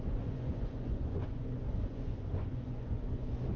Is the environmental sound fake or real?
fake